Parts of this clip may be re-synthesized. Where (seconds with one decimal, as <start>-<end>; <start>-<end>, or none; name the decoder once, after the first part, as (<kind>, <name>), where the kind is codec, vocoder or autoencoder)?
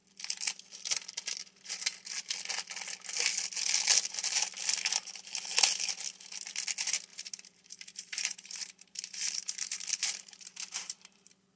7.1-11.6 (vocoder, BigVGAN v2)